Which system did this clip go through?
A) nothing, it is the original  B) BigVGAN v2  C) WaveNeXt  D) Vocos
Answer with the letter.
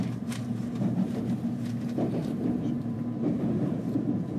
B